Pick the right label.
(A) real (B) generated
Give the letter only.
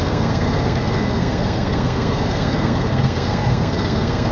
B